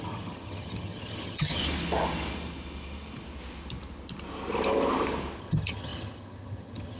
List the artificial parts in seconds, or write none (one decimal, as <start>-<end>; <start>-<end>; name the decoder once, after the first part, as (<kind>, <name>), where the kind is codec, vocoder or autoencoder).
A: 0.0-1.6 (vocoder, HiFi-GAN); 5.4-7.0